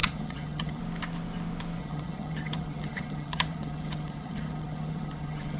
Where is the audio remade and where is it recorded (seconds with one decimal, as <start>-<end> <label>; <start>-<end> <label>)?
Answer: 0.0-0.8 remade; 0.8-1.8 recorded; 1.8-5.6 remade

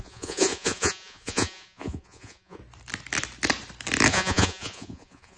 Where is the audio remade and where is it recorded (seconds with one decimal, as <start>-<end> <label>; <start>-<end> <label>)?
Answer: 0.0-2.6 remade; 2.6-4.1 recorded; 4.1-5.4 remade

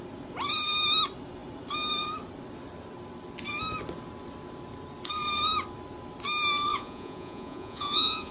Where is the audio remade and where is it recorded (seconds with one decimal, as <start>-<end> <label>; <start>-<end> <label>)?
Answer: 0.0-6.7 recorded; 6.7-8.3 remade

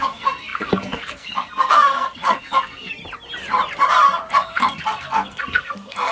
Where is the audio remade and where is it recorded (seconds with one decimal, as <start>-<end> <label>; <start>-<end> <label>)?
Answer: 0.0-3.0 remade; 3.0-4.3 recorded; 4.3-6.1 remade